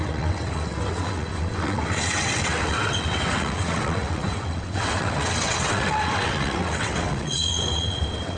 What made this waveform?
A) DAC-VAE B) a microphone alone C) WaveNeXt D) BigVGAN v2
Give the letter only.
C